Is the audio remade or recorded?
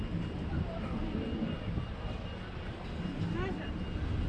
recorded